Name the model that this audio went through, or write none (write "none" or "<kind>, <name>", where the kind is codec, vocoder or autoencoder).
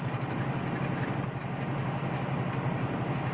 none